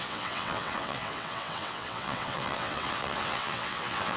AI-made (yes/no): yes